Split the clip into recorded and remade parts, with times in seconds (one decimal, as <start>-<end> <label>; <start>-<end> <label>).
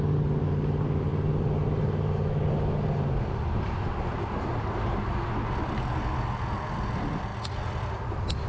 0.0-8.5 recorded